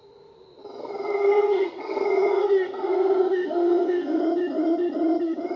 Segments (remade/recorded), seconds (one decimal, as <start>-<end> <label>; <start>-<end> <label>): 0.0-0.8 recorded; 0.8-4.2 remade; 4.2-5.6 recorded